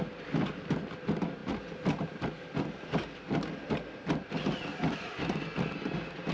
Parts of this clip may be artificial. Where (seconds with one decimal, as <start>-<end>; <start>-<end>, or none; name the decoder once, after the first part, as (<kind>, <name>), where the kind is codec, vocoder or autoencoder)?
none